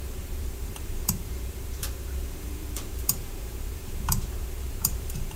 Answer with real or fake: fake